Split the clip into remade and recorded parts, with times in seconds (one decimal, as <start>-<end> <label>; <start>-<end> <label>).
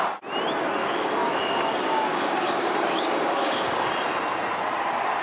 0.0-0.8 recorded; 0.8-3.9 remade; 3.9-5.2 recorded